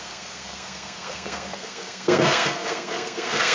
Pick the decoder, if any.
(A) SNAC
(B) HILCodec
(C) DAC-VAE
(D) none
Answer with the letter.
A